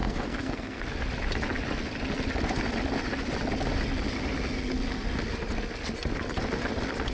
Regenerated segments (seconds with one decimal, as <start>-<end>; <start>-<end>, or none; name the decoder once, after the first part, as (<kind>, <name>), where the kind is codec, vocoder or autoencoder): 0.0-0.8 (codec, SNAC)